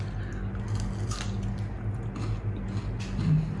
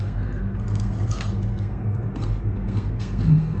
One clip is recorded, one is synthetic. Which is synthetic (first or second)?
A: second